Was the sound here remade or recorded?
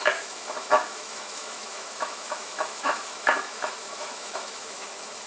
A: remade